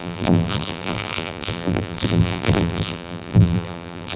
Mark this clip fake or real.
fake